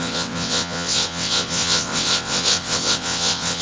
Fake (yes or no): yes